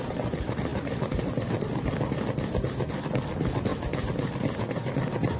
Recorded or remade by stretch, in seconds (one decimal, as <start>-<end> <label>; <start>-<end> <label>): 0.0-3.7 remade; 3.7-5.4 recorded